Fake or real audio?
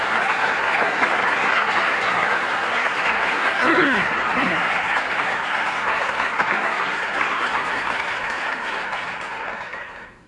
fake